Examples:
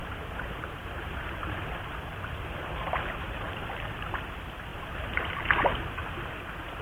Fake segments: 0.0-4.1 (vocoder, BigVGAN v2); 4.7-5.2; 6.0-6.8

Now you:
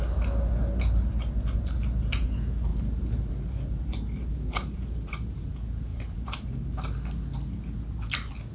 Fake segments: 2.7-5.5 (vocoder, BigVGAN v2); 5.9-6.5

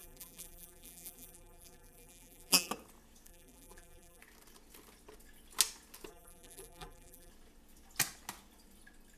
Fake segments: 0.0-2.7 (vocoder, BigVGAN v2); 3.3-4.2; 6.1-7.3

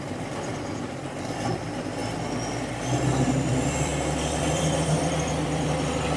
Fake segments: 0.0-2.0 (vocoder, BigVGAN v2); 2.7-3.9; 4.4-6.2

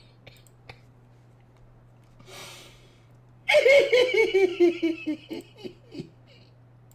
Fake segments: 2.4-3.6 (vocoder, BigVGAN v2)

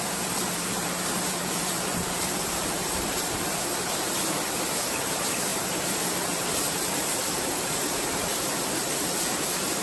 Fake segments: 0.0-8.3 (vocoder, BigVGAN v2); 9.0-9.8

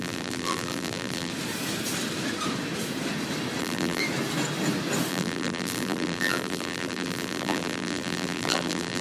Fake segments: 0.0-1.3 (vocoder, BigVGAN v2); 3.6-4.0; 5.1-9.0